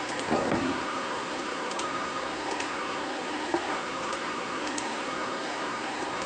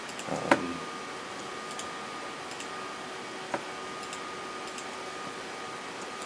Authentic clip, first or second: second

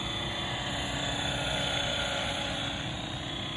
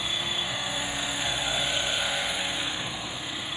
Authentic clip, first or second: first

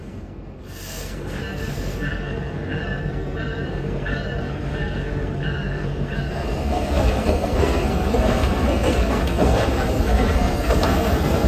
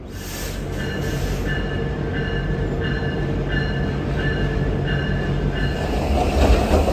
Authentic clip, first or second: second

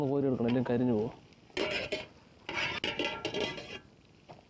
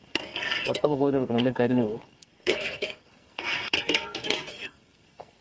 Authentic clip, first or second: first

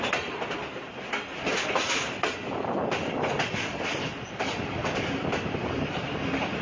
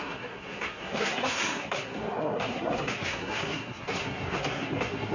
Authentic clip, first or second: first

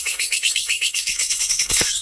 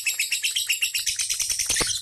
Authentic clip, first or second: second